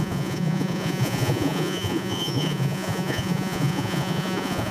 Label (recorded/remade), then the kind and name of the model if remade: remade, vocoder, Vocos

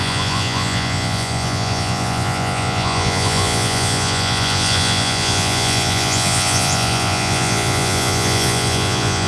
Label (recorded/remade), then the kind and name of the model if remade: remade, vocoder, Vocos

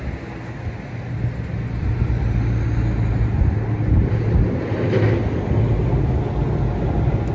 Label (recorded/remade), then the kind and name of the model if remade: recorded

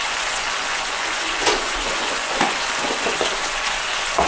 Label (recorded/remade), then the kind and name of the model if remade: remade, vocoder, Vocos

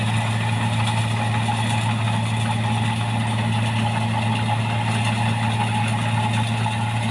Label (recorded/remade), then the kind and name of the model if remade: recorded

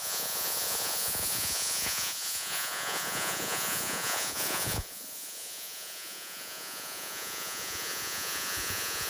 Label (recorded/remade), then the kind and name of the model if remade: remade, vocoder, Vocos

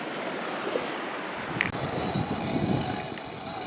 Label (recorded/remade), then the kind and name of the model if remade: recorded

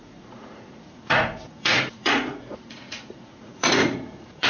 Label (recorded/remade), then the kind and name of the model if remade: remade, vocoder, Vocos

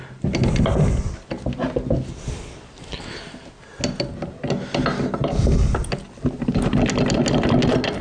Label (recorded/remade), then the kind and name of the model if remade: recorded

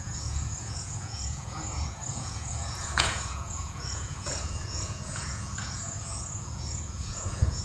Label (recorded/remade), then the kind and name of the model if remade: remade, vocoder, Vocos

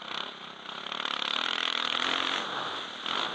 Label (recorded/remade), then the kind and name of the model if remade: recorded